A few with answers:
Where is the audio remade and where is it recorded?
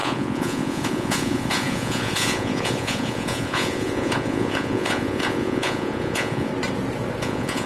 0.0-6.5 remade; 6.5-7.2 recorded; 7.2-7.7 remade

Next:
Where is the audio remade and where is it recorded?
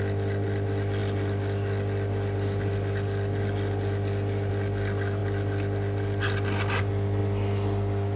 0.0-8.2 recorded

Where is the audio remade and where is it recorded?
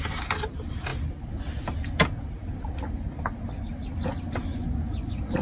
0.0-4.5 recorded; 4.5-5.4 remade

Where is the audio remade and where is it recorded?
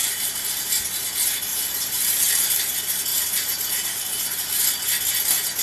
0.0-0.7 remade; 0.7-1.5 recorded; 1.5-2.6 remade; 2.6-3.1 recorded; 3.1-4.7 remade; 4.7-5.6 recorded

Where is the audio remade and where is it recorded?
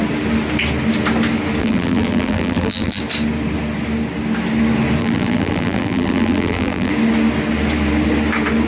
0.0-1.6 recorded; 1.6-3.0 remade; 3.0-5.0 recorded; 5.0-6.9 remade; 6.9-8.7 recorded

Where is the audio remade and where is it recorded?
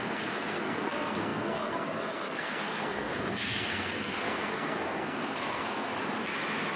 0.0-5.9 remade; 5.9-6.8 recorded